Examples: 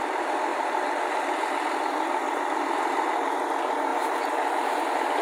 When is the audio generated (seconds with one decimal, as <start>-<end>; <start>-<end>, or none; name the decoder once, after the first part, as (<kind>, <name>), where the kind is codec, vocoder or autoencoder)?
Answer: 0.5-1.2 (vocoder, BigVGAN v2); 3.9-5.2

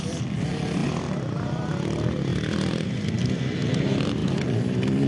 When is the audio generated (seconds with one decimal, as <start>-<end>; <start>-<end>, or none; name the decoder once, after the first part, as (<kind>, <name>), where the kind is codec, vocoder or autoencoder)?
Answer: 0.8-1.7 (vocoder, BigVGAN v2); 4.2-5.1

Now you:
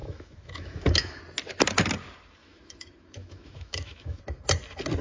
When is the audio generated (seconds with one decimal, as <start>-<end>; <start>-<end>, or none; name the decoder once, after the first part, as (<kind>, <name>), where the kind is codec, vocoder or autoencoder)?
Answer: 0.0-1.2 (autoencoder, DAC-VAE); 2.4-4.2